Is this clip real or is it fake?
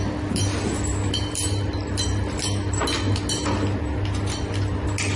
real